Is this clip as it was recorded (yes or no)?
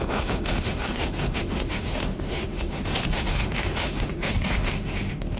no